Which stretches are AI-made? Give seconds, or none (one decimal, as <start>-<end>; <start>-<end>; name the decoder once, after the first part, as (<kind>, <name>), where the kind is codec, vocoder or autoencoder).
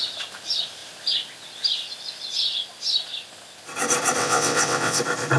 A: 4.2-5.0 (vocoder, WaveNeXt)